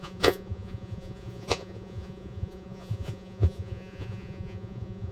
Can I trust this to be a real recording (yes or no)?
no